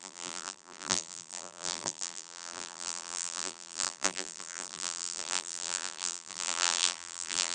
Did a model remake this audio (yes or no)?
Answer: yes